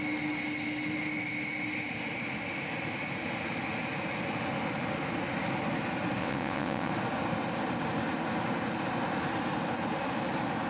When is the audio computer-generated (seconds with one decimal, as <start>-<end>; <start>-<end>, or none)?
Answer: 6.2-6.9